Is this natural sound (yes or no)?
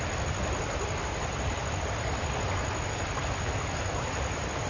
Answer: yes